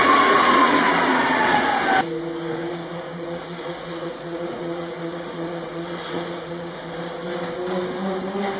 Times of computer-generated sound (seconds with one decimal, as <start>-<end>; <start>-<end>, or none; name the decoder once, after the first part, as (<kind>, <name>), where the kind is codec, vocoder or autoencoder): 0.0-1.7 (vocoder, Vocos); 2.7-6.8